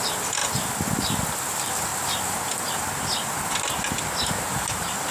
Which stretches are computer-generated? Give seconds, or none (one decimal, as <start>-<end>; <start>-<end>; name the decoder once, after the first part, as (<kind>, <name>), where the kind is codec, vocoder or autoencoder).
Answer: none